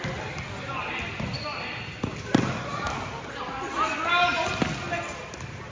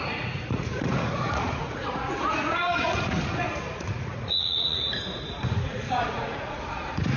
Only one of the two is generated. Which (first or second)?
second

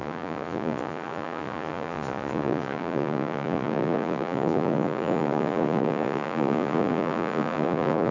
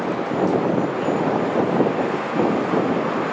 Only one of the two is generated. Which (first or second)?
first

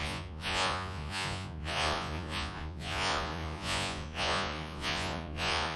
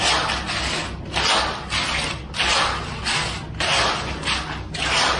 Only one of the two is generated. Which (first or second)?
first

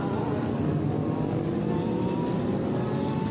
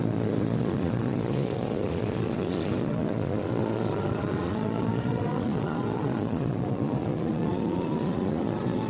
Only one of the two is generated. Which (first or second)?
second